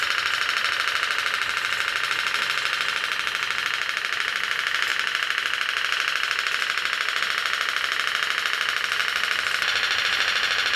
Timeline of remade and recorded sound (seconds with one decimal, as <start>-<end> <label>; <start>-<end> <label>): 0.0-10.8 recorded